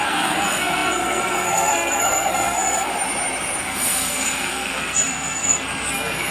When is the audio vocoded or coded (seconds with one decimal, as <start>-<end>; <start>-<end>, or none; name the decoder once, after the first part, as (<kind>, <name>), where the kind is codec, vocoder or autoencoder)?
0.0-2.9 (codec, SNAC); 3.6-6.3